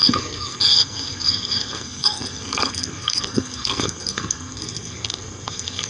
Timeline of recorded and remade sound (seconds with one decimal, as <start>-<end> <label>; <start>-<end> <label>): 0.0-5.9 remade